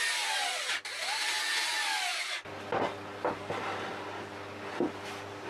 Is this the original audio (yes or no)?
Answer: yes